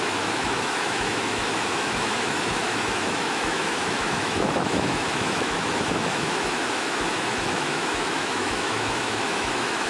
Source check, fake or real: fake